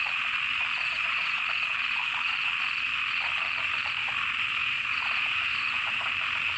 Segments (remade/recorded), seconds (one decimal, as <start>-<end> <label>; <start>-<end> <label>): 0.0-0.8 recorded; 0.8-1.4 remade; 1.4-4.6 recorded; 4.6-6.0 remade; 6.0-6.6 recorded